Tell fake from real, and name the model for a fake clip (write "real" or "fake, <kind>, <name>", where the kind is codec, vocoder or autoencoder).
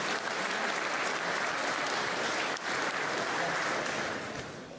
real